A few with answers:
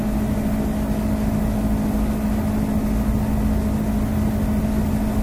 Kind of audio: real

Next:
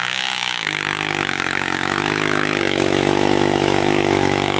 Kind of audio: fake